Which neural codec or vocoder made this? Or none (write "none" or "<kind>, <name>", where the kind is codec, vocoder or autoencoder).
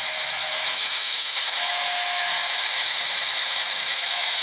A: autoencoder, DAC-VAE